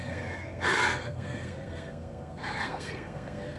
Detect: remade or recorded remade